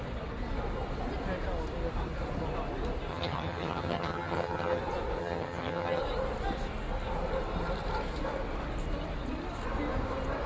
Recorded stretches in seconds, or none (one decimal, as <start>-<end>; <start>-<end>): 0.0-3.1; 4.8-5.2; 6.0-10.5